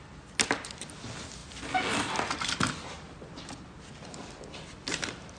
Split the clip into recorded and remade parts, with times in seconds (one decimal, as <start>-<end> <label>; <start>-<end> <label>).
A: 0.0-5.4 recorded